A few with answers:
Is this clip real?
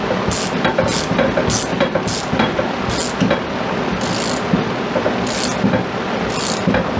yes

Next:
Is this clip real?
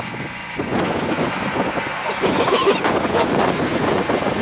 no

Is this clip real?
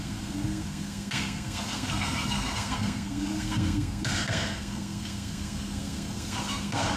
no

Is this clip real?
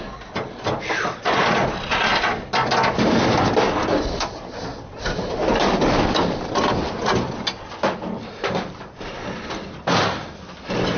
yes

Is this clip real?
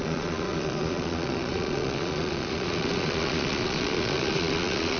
no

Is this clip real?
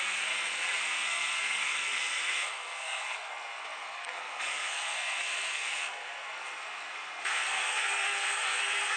no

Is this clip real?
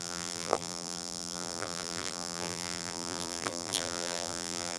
no